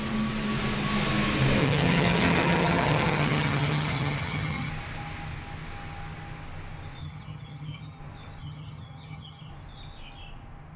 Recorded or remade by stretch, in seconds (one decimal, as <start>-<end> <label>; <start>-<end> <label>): 0.0-1.6 recorded; 1.6-4.7 remade; 4.7-7.0 recorded; 7.0-8.0 remade; 8.0-8.4 recorded; 8.4-9.5 remade; 9.5-10.8 recorded